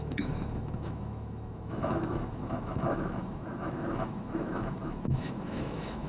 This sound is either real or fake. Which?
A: fake